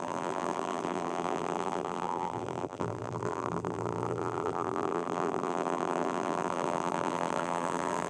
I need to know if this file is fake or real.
fake